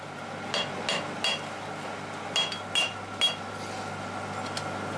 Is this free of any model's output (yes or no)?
yes